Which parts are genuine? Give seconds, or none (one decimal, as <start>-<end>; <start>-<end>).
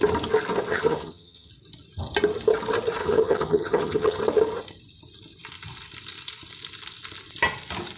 0.0-0.7; 1.5-3.0; 4.2-8.0